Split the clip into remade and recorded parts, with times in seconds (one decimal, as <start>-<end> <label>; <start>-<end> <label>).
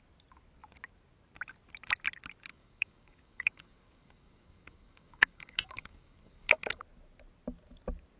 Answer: 0.0-2.5 recorded; 2.5-6.8 remade; 6.8-8.2 recorded